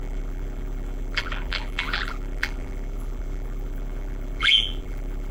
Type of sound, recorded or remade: remade